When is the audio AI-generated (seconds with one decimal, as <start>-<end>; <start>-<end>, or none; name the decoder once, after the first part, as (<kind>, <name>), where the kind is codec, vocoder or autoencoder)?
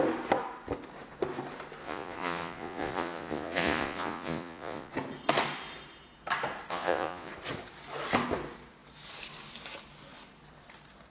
1.8-4.9 (vocoder, Vocos); 6.7-7.3